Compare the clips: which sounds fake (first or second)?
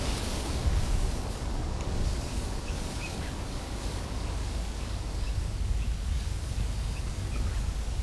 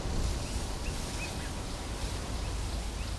first